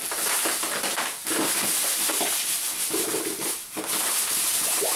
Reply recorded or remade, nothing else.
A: recorded